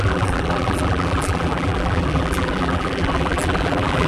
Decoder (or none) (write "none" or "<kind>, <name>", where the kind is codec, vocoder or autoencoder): vocoder, BigVGAN v2